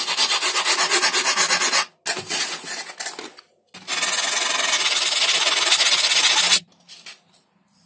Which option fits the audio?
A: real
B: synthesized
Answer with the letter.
A